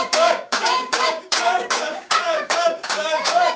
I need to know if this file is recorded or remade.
remade